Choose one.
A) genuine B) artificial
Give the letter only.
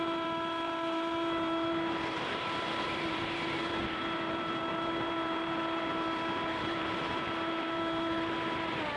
B